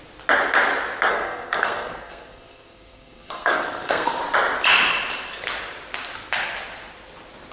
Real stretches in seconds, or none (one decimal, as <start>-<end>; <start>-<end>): 0.0-1.1; 4.2-7.5